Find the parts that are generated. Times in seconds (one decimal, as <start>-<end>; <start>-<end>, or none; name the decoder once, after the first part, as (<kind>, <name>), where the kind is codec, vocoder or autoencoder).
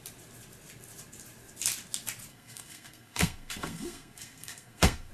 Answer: 2.3-5.1 (codec, SNAC)